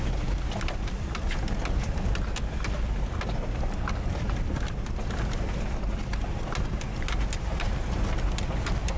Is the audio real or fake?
real